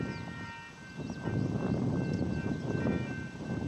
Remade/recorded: recorded